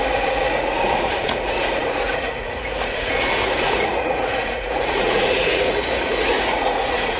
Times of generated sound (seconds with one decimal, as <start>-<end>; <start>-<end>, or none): 0.0-7.2